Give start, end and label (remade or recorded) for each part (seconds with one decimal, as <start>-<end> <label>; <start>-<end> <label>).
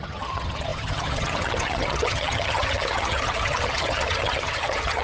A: 0.0-5.0 remade